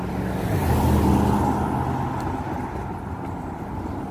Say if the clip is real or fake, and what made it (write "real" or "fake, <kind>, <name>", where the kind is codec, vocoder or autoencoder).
real